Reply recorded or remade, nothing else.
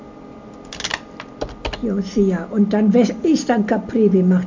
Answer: recorded